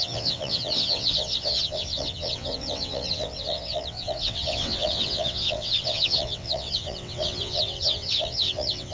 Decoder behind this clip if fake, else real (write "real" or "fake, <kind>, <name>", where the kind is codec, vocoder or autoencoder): fake, vocoder, WaveNeXt